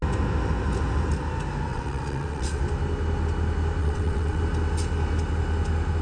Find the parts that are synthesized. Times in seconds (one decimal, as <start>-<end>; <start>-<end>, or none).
1.7-2.6; 3.8-4.4